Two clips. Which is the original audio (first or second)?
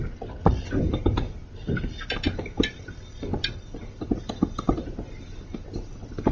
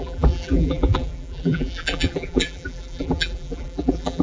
first